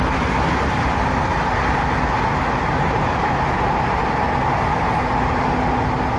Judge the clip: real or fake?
real